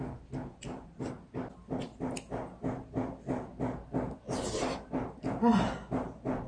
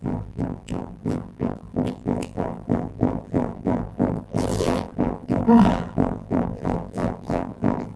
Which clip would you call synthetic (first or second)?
second